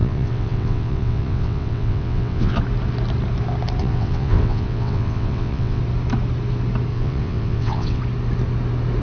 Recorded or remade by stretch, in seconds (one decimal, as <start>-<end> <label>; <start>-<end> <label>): 0.0-2.6 remade; 2.6-3.8 recorded; 3.8-5.8 remade; 5.8-6.9 recorded; 6.9-8.0 remade; 8.0-9.0 recorded